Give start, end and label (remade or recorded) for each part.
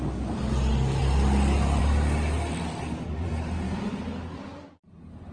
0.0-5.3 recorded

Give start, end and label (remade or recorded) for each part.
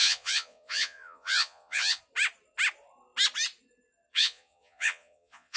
0.0-2.0 remade; 2.0-4.1 recorded; 4.1-5.6 remade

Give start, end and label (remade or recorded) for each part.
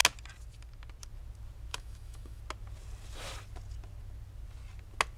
0.0-1.7 recorded; 1.7-2.4 remade; 2.4-5.2 recorded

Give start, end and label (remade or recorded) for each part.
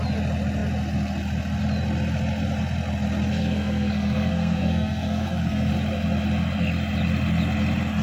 0.0-3.3 recorded; 3.3-5.7 remade; 5.7-8.0 recorded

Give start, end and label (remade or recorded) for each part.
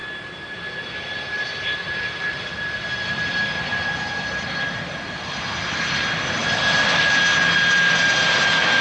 0.0-2.7 remade; 2.7-6.4 recorded; 6.4-7.2 remade; 7.2-8.8 recorded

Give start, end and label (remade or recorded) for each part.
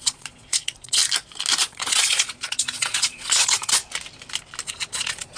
0.0-1.0 remade; 1.0-1.6 recorded; 1.6-3.8 remade; 3.8-4.7 recorded; 4.7-5.4 remade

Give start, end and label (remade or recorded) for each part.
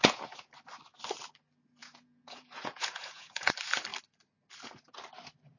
0.0-0.5 remade; 0.5-1.8 recorded; 1.8-3.5 remade; 3.5-5.6 recorded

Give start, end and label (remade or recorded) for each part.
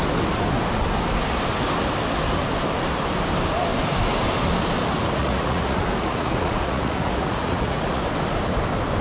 0.0-5.2 recorded; 5.2-8.0 remade; 8.0-9.0 recorded